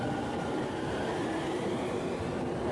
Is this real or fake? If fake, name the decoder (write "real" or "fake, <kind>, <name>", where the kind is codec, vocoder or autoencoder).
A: real